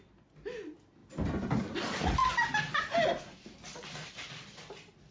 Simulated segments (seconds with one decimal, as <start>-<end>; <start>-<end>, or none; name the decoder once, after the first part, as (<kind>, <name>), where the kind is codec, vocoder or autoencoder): none